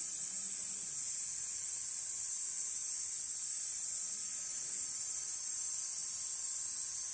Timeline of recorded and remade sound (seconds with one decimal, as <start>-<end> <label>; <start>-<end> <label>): 0.0-7.1 recorded